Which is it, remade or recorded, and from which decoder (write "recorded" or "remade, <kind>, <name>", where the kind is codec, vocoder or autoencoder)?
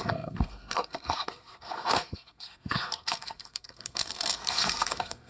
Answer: remade, codec, SNAC